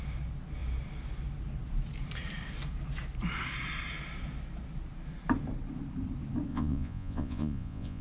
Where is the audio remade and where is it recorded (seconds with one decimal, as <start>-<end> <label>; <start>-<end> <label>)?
0.0-6.5 recorded; 6.5-8.0 remade